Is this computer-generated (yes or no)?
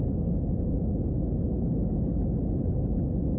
no